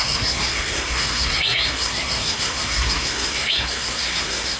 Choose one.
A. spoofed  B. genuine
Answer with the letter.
A